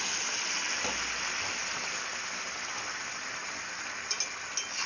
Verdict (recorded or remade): recorded